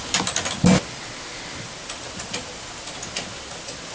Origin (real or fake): real